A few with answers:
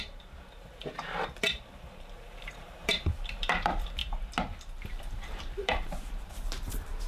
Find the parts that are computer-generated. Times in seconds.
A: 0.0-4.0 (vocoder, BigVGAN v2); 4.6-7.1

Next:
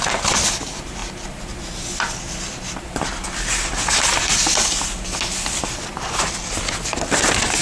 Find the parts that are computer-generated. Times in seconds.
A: none

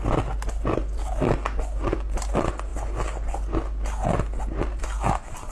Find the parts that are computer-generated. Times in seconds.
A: none

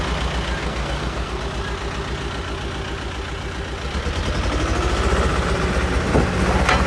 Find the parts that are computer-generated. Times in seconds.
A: 0.6-1.4 (codec, SNAC)

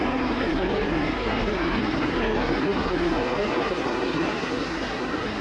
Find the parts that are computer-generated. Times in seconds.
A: 0.0-5.4 (codec, SNAC)

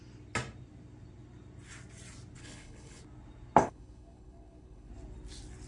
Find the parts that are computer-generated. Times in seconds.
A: 2.4-3.0 (codec, HILCodec); 3.6-4.9

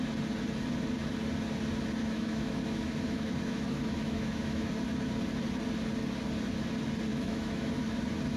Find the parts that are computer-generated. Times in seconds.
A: 2.0-4.7 (autoencoder, DAC-VAE); 7.1-7.7

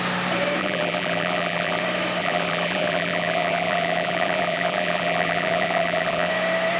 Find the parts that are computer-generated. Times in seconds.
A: 0.6-1.8 (vocoder, BigVGAN v2); 2.2-6.3